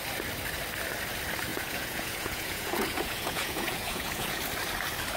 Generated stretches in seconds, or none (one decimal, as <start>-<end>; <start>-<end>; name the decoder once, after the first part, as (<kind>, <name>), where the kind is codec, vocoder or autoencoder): 1.5-4.4 (vocoder, Vocos)